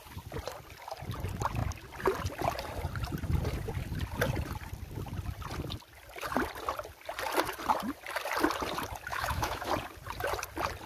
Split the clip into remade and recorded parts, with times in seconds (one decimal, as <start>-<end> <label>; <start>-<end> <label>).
0.0-9.1 recorded; 9.1-9.7 remade; 9.7-10.9 recorded